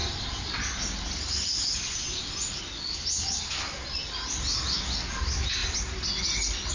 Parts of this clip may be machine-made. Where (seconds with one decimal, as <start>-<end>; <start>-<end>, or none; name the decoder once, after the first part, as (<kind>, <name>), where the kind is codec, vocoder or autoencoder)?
none